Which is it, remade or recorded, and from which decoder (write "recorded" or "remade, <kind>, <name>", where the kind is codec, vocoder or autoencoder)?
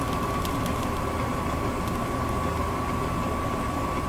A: recorded